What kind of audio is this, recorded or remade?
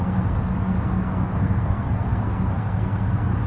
remade